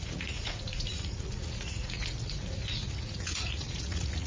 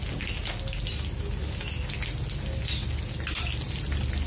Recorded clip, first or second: second